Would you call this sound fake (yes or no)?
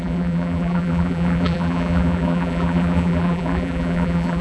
yes